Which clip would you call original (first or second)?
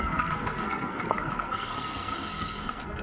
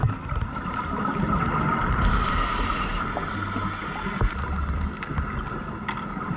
second